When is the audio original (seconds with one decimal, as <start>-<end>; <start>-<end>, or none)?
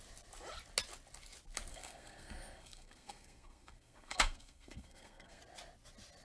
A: 0.0-1.7; 5.4-6.2